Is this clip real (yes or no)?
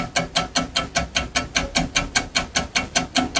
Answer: yes